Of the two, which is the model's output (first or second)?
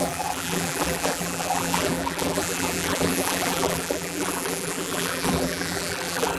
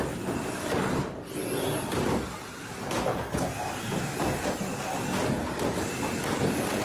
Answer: first